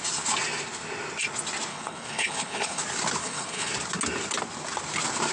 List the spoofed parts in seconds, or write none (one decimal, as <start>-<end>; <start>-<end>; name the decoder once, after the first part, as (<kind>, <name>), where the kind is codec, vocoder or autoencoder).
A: 1.7-2.8 (codec, HILCodec); 3.2-3.7